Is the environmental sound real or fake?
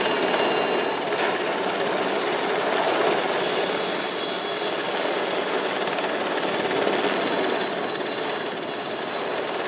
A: real